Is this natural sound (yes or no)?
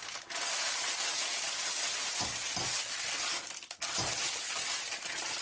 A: yes